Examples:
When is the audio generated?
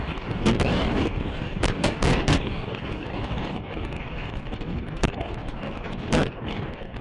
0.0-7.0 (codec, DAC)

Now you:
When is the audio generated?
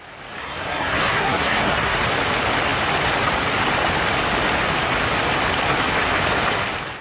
0.4-2.0 (codec, SNAC)